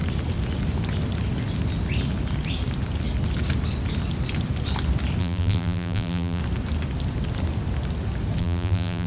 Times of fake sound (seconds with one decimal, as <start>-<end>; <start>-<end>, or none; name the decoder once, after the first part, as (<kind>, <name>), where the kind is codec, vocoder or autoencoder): 5.2-6.4 (vocoder, BigVGAN v2); 8.4-9.1